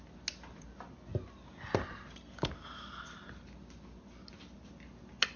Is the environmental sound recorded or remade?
recorded